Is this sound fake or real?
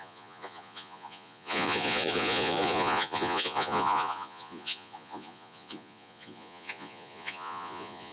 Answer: fake